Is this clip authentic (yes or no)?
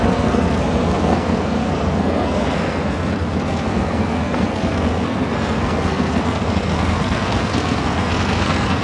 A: no